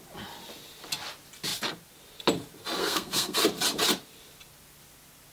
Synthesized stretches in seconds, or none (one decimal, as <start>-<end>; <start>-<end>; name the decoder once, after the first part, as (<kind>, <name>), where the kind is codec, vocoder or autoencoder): 2.8-3.4 (codec, SNAC)